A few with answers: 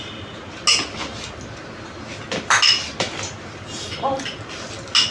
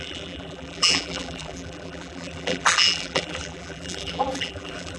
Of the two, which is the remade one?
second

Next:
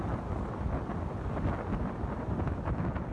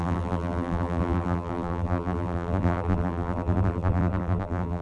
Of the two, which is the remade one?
second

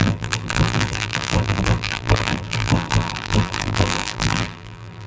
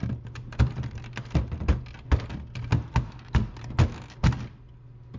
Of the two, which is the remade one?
first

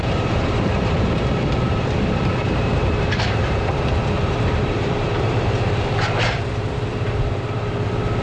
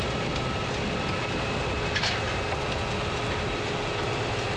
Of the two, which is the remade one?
first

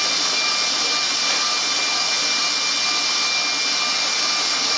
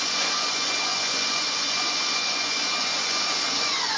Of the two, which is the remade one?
second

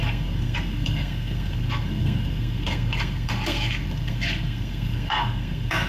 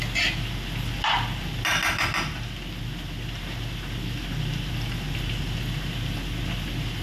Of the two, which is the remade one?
first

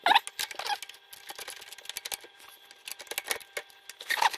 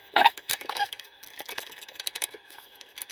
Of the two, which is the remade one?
second